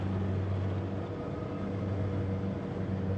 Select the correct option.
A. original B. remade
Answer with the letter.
A